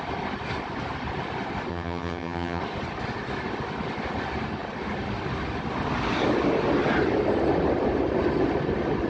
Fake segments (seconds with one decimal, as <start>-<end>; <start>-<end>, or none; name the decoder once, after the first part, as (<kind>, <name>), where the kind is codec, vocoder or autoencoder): 1.7-2.6 (vocoder, HiFi-GAN)